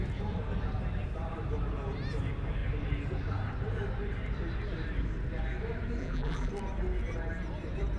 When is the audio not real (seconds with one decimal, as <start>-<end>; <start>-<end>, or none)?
6.0-6.5